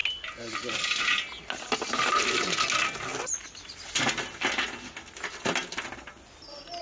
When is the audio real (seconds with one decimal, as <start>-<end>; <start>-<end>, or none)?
0.0-6.8